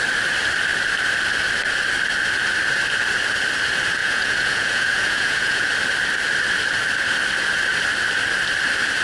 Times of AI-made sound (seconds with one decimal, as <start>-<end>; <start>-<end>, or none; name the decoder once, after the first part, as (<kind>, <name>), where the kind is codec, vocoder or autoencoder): 4.0-5.7 (vocoder, Vocos)